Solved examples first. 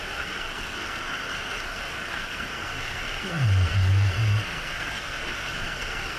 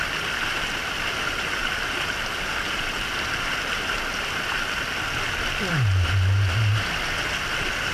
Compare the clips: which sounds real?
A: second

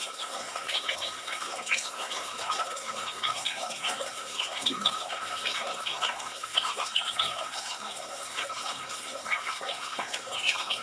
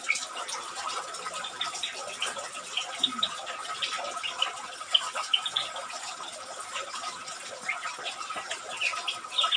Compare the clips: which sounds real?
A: second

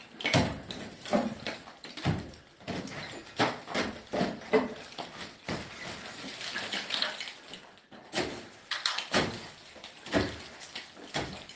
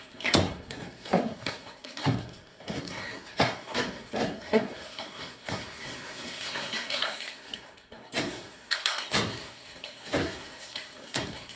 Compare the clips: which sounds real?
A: first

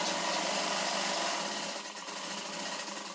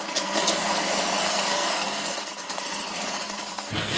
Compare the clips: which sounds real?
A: first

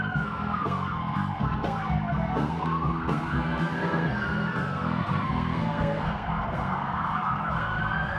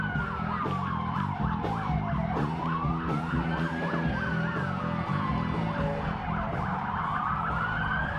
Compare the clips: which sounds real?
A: second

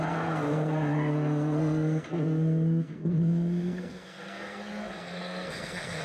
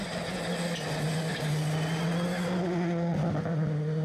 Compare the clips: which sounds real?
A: second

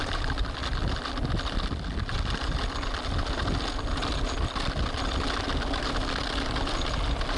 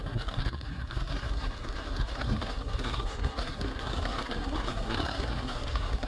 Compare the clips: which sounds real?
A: first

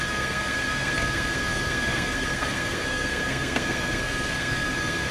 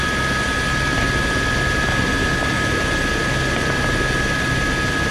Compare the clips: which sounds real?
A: second